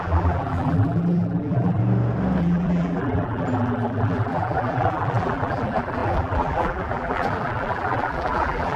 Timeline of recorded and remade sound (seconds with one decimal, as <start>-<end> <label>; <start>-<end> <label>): 0.0-1.8 remade; 1.8-2.4 recorded; 2.4-8.8 remade